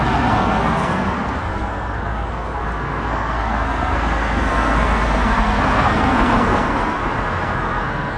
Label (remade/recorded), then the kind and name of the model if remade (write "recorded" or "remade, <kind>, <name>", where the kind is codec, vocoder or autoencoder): remade, codec, SNAC